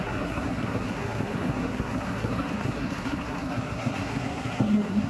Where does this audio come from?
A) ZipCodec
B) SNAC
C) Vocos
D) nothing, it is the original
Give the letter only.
B